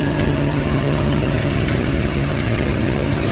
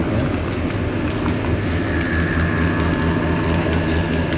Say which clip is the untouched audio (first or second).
second